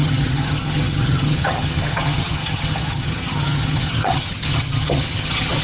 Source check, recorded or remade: remade